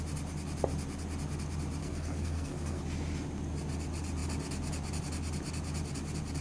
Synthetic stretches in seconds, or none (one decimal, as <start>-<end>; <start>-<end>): 1.8-2.8